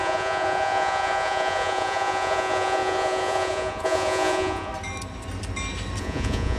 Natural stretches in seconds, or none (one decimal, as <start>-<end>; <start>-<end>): 4.7-6.0